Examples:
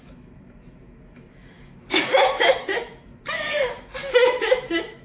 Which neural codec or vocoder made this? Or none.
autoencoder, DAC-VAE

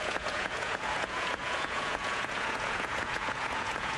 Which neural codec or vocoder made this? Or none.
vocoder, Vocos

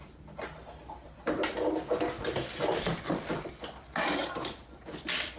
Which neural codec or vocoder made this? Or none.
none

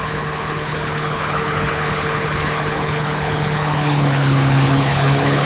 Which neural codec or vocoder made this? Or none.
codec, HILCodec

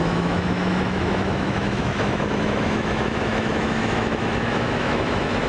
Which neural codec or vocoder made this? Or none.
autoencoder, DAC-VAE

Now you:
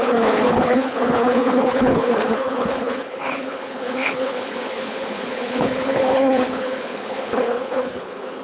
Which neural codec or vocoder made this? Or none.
codec, HILCodec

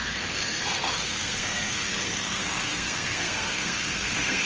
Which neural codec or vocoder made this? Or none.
codec, SNAC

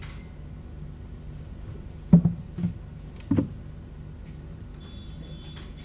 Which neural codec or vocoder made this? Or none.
none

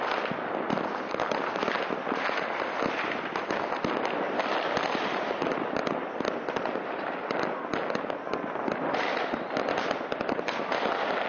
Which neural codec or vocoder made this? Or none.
none